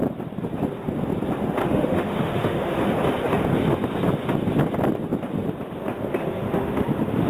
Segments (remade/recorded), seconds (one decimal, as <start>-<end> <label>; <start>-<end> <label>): 0.0-1.6 recorded; 1.6-2.8 remade; 2.8-6.2 recorded; 6.2-6.7 remade; 6.7-7.3 recorded